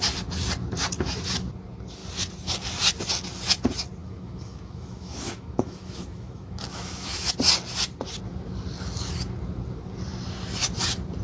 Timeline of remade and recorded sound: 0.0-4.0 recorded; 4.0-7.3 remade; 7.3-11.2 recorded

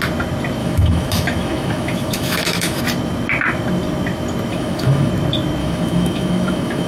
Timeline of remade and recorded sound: 0.0-0.6 recorded; 0.6-2.8 remade; 2.8-4.5 recorded; 4.5-5.1 remade; 5.1-5.6 recorded; 5.6-6.9 remade

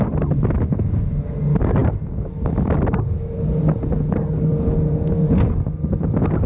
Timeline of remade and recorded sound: 0.0-6.5 recorded

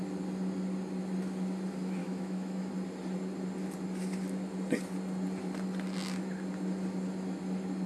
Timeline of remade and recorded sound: 0.0-2.0 recorded; 2.0-2.7 remade; 2.7-7.9 recorded